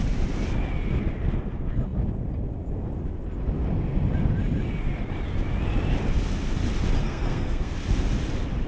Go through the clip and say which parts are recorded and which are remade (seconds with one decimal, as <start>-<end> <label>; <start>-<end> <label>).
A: 0.0-7.0 recorded; 7.0-7.7 remade; 7.7-8.7 recorded